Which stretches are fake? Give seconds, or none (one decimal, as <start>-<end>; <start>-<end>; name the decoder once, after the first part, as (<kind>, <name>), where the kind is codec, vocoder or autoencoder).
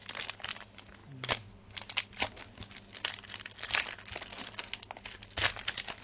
none